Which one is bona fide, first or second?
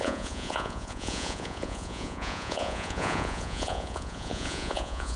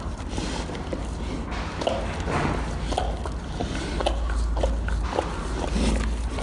second